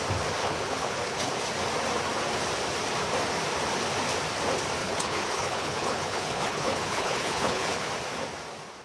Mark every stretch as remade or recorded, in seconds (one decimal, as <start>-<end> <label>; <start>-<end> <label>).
0.0-0.4 recorded; 0.4-1.3 remade; 1.3-4.8 recorded; 4.8-7.9 remade; 7.9-8.8 recorded